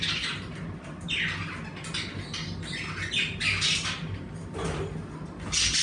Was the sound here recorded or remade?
recorded